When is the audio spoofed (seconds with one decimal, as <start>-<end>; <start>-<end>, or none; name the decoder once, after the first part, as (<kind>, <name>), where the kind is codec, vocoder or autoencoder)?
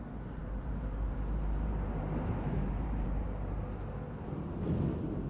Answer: 0.4-3.6 (vocoder, BigVGAN v2)